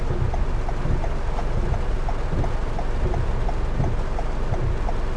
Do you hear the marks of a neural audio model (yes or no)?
no